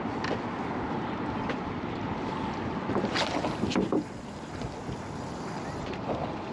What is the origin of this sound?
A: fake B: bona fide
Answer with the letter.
B